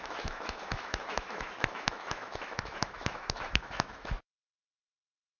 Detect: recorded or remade remade